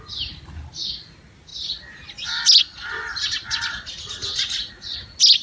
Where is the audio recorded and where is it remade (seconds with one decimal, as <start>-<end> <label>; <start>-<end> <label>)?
0.0-5.4 recorded